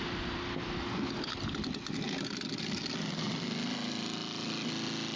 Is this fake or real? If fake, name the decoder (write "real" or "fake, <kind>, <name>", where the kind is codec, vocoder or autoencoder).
real